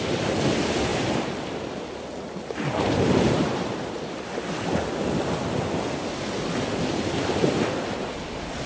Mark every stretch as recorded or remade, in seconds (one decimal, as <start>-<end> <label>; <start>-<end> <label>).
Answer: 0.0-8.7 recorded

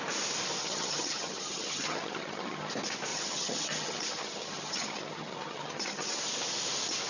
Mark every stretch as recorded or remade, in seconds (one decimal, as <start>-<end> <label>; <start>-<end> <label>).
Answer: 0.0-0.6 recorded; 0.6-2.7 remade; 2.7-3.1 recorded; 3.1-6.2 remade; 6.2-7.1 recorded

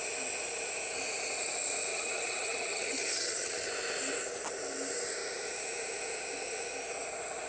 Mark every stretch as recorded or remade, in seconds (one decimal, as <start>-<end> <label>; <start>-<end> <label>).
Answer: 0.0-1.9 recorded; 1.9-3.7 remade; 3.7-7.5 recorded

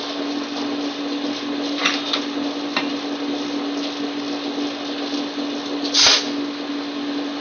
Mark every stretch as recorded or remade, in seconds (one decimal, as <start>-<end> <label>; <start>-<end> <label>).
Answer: 0.0-7.4 recorded

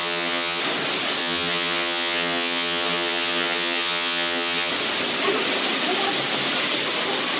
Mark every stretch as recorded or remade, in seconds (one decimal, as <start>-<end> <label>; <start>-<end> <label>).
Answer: 0.0-0.6 remade; 0.6-1.2 recorded; 1.2-4.7 remade; 4.7-7.4 recorded

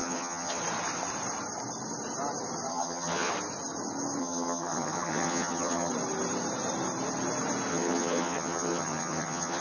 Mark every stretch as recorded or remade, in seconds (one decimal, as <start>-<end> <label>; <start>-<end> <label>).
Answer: 0.0-0.6 remade; 0.6-2.7 recorded; 2.7-3.3 remade; 3.3-4.2 recorded; 4.2-5.9 remade; 5.9-7.7 recorded; 7.7-9.6 remade

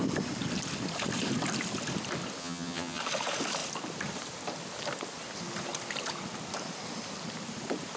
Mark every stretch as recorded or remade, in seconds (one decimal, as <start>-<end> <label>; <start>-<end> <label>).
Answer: 0.0-2.4 recorded; 2.4-3.0 remade; 3.0-8.0 recorded